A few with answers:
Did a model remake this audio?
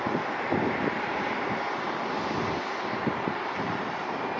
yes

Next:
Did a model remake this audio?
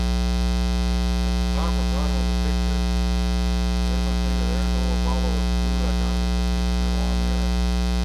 no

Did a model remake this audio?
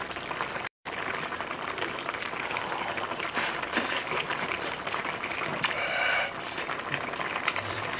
yes